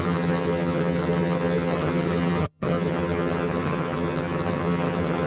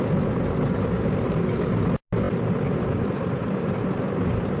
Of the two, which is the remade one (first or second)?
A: first